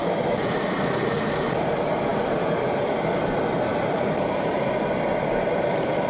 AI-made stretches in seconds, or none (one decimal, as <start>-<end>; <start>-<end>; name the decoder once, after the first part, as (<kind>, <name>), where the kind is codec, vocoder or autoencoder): 0.0-6.1 (vocoder, BigVGAN v2)